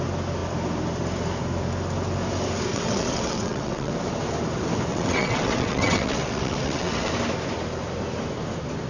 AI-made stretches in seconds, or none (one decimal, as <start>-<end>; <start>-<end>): 2.7-3.9; 4.9-7.1